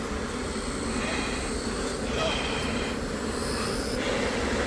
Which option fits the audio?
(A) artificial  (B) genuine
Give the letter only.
B